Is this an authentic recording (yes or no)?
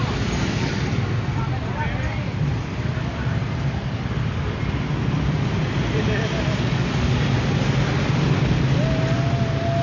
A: yes